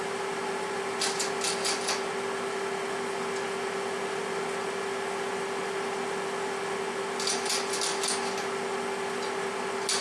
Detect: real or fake real